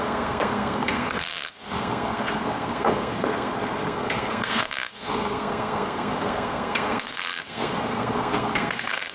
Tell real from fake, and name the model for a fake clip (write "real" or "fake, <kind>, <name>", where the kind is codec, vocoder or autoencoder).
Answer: fake, codec, SNAC